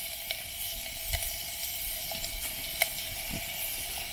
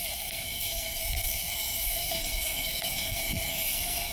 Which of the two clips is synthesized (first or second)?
second